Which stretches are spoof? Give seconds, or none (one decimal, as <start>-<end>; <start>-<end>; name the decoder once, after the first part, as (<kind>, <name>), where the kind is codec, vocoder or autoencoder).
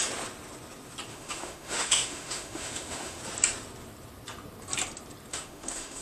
1.1-3.2 (autoencoder, DAC-VAE); 5.3-6.0